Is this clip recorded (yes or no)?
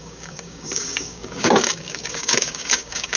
no